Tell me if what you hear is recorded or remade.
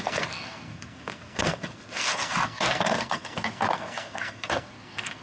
remade